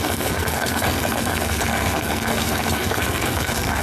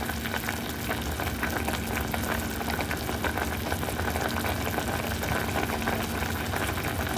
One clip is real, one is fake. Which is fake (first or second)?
first